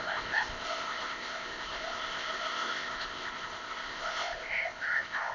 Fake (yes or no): yes